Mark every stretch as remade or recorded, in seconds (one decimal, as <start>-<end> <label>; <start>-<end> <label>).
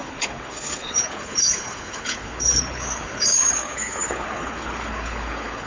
0.0-5.7 remade